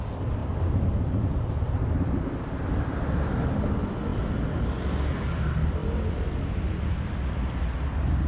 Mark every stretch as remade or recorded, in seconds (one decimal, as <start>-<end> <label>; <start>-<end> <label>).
0.0-8.3 recorded